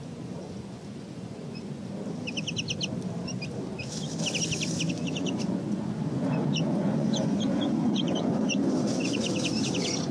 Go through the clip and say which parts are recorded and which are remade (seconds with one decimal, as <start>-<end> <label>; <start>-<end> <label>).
0.0-1.8 remade; 1.8-4.9 recorded; 4.9-10.1 remade